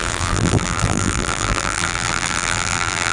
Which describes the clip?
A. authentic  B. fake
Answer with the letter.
B